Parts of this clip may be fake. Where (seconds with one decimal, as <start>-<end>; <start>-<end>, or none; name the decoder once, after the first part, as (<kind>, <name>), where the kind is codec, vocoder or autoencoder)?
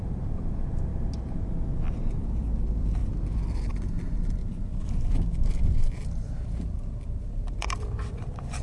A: 0.0-0.9 (vocoder, BigVGAN v2); 2.1-4.4; 5.9-8.6